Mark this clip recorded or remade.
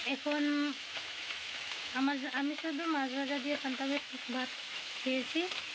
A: remade